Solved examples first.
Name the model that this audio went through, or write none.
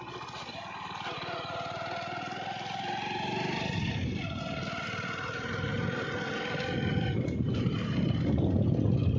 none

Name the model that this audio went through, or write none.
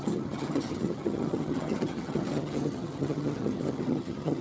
vocoder, HiFi-GAN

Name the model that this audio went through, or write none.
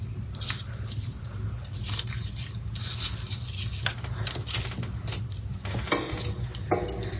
none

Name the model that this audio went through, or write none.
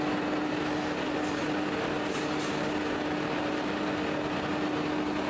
none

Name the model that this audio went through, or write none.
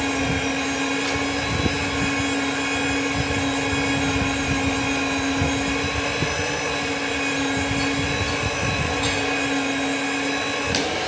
none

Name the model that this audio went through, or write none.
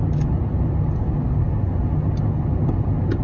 none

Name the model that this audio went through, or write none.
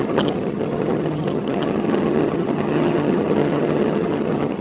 vocoder, HiFi-GAN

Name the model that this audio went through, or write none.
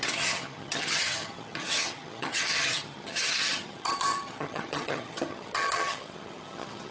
vocoder, HiFi-GAN